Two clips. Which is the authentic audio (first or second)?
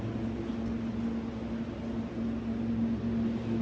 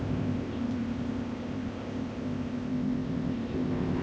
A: first